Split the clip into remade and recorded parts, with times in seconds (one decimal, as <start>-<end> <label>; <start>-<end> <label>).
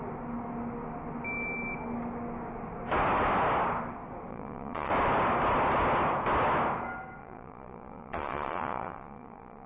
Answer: 0.0-4.3 recorded; 4.3-4.9 remade; 4.9-7.2 recorded; 7.2-9.7 remade